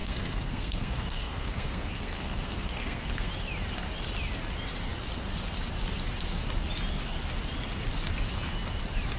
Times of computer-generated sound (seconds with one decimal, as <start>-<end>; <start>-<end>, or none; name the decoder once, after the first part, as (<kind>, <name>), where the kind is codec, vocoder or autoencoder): 0.0-3.3 (codec, SNAC)